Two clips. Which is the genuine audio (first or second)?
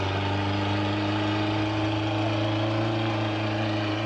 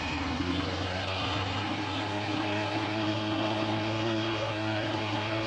first